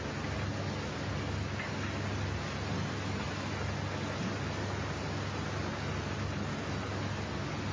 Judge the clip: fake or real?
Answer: real